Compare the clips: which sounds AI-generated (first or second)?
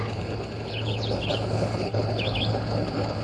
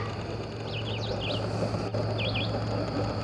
first